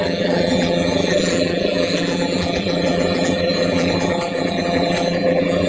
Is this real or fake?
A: fake